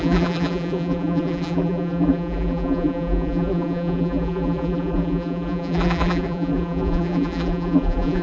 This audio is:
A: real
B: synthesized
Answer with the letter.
B